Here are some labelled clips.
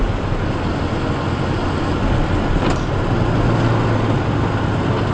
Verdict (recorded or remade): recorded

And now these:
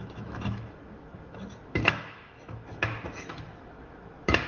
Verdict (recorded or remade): remade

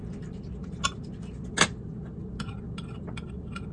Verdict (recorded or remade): recorded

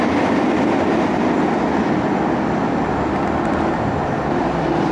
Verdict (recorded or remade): recorded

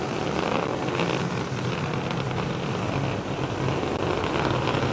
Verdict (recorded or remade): recorded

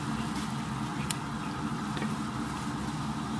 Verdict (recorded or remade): recorded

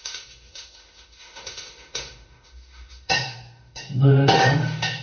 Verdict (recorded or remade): remade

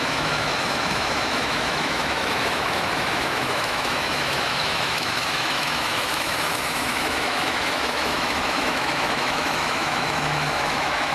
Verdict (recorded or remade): remade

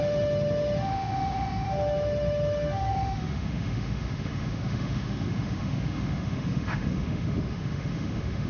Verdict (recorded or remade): remade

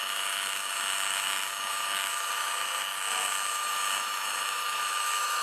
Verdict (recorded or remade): remade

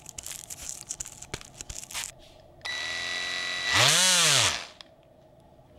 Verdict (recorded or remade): recorded